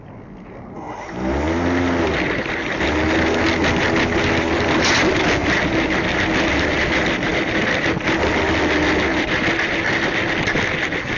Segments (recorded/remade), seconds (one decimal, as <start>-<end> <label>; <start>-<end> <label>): 0.0-11.2 recorded